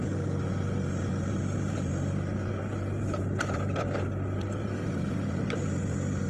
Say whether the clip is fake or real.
real